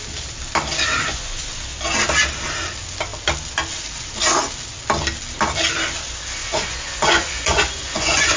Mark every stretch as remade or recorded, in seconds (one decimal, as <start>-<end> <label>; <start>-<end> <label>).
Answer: 0.0-1.0 recorded; 1.0-1.6 remade; 1.6-6.4 recorded; 6.4-8.4 remade